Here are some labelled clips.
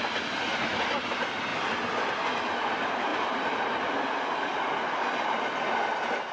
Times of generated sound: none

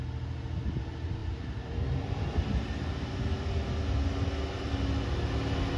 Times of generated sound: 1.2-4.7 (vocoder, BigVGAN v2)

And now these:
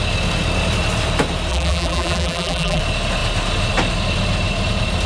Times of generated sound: 1.5-2.8 (vocoder, BigVGAN v2)

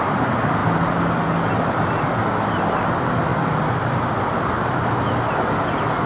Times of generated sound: 3.3-4.9 (vocoder, BigVGAN v2)

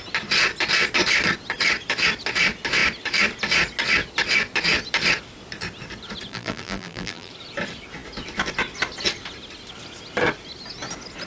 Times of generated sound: 6.3-7.3 (vocoder, BigVGAN v2)

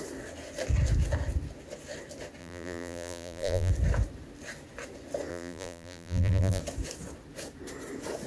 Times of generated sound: 2.4-3.7 (vocoder, BigVGAN v2); 5.3-6.6